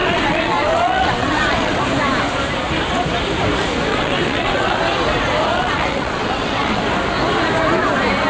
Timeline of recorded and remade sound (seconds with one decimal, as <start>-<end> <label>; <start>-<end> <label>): 0.0-1.8 remade; 1.8-3.9 recorded; 3.9-4.8 remade; 4.8-5.5 recorded; 5.5-6.8 remade; 6.8-8.3 recorded